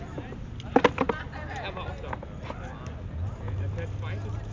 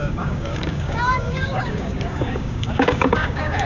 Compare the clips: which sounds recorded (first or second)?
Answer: first